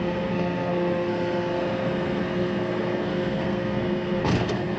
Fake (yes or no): yes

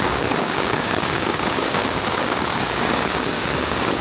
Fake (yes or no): yes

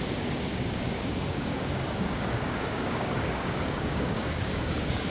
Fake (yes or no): yes